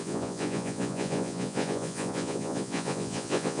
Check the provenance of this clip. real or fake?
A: fake